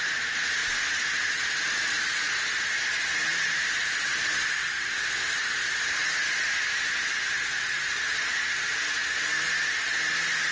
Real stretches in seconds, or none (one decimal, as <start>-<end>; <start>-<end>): 0.0-10.5